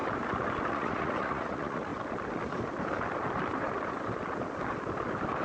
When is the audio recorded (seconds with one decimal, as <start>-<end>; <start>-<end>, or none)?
0.0-0.7; 1.9-5.4